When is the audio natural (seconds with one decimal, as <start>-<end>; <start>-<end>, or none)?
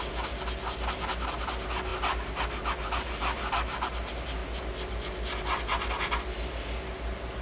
0.0-7.4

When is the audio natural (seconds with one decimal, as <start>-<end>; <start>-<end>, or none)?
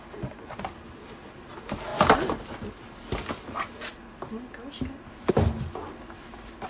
0.0-6.7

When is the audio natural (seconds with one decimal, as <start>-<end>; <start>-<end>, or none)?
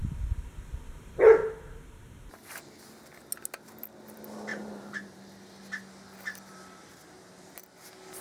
0.0-1.4; 2.6-4.5; 5.2-8.2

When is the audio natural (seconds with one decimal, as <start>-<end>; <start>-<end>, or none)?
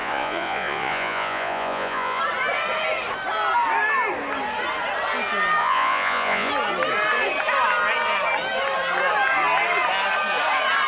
2.2-5.6; 6.5-10.9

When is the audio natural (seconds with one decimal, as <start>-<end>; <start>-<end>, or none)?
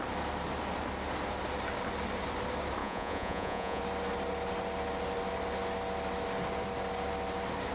0.0-2.8; 3.8-7.7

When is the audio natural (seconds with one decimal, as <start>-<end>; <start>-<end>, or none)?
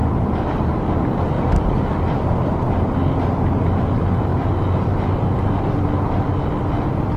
0.0-7.2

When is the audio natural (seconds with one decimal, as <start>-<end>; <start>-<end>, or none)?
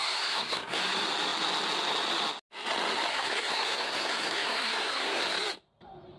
0.8-3.1; 5.2-6.2